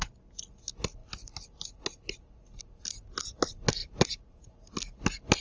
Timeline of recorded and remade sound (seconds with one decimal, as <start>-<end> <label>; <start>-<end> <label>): 0.0-3.8 recorded; 3.8-4.5 remade; 4.5-5.4 recorded